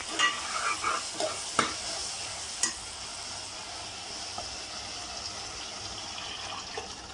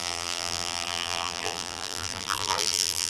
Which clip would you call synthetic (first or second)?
second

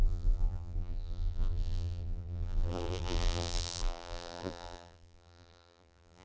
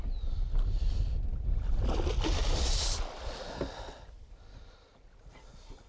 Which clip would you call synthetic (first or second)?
first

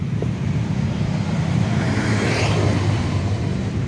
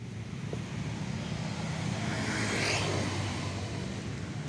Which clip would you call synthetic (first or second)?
first